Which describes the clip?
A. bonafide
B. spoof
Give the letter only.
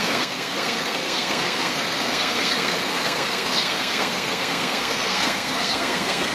B